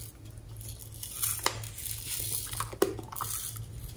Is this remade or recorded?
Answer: recorded